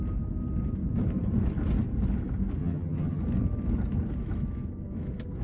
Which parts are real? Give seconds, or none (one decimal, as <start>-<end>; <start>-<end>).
0.0-2.6; 3.2-5.4